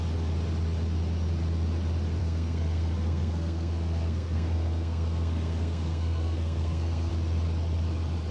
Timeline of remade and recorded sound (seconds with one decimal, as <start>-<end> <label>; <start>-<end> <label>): 0.0-2.2 recorded; 2.2-7.1 remade; 7.1-8.3 recorded